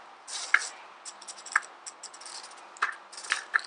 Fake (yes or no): no